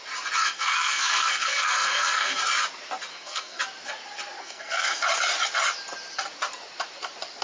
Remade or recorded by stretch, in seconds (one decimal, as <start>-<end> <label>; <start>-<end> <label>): 0.0-0.4 recorded; 0.4-2.4 remade; 2.4-3.1 recorded; 3.1-3.6 remade; 3.6-4.4 recorded; 4.4-5.0 remade; 5.0-7.4 recorded